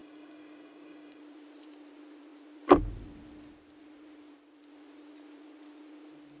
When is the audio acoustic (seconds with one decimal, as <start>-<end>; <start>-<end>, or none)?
1.2-6.4